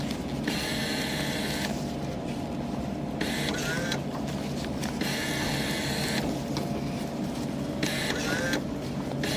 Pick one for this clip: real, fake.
real